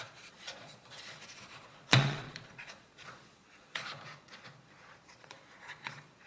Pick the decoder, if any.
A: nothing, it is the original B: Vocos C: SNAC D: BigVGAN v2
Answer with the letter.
B